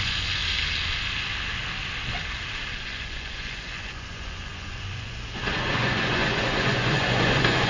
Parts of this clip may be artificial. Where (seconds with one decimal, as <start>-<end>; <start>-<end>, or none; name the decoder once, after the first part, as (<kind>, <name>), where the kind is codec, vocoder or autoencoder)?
0.0-0.4 (vocoder, Vocos); 2.8-7.7